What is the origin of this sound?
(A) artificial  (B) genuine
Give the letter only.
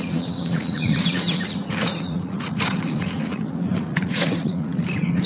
A